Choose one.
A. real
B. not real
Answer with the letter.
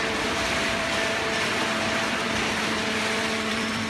B